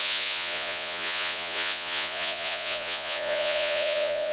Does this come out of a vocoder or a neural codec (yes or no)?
yes